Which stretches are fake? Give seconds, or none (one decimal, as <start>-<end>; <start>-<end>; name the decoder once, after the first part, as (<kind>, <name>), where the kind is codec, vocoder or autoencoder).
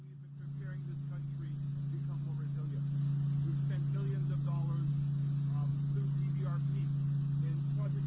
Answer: none